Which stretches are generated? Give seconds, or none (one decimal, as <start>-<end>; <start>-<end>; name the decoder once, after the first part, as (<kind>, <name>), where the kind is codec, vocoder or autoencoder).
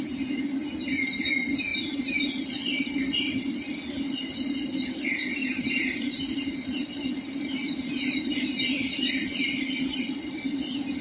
5.4-10.1 (vocoder, BigVGAN v2)